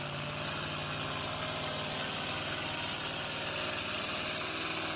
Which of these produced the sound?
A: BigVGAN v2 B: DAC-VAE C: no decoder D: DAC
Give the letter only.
C